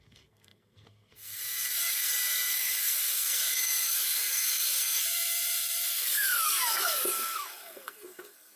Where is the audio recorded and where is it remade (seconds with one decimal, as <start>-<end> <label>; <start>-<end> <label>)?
0.0-8.6 remade